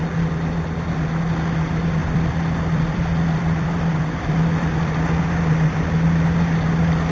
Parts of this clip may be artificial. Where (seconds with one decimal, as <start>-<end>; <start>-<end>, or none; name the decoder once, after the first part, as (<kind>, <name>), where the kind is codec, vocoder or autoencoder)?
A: 2.0-5.2 (vocoder, BigVGAN v2)